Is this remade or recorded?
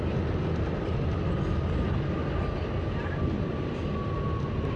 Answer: recorded